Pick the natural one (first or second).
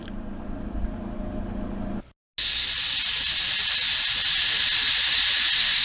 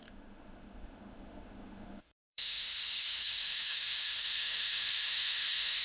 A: first